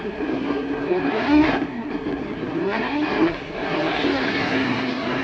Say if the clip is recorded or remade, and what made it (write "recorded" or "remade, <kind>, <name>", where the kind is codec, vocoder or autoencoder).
remade, codec, SNAC